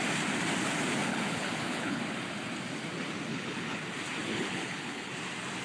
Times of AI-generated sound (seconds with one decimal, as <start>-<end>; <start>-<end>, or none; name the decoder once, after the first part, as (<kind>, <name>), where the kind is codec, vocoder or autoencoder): 1.1-2.0 (codec, HILCodec); 3.3-3.8; 4.3-5.1